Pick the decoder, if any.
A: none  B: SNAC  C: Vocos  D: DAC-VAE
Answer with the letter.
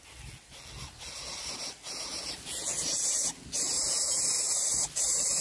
A